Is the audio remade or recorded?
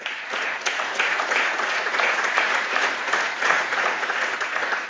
remade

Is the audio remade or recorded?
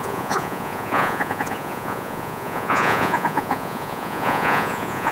remade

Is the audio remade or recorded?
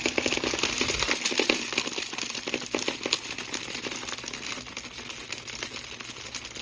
recorded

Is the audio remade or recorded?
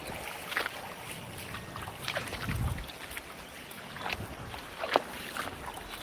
recorded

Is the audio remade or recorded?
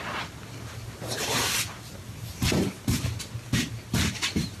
recorded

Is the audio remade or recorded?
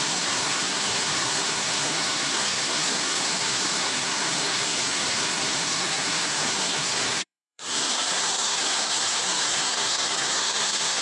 remade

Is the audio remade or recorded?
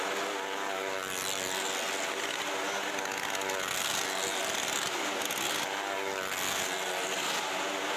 recorded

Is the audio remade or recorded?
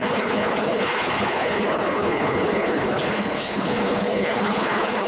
remade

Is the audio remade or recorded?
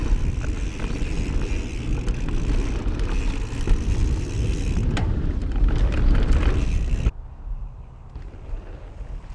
recorded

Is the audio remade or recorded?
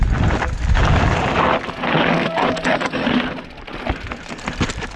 recorded